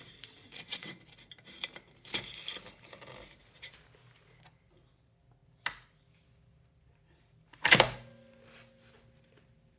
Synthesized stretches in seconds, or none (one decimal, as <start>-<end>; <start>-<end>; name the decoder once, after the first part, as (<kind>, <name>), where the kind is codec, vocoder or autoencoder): 0.4-1.0 (vocoder, WaveNeXt)